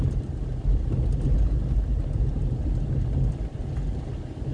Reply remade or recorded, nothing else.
recorded